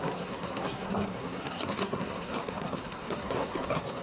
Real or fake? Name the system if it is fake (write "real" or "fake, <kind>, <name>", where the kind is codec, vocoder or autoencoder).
fake, codec, SNAC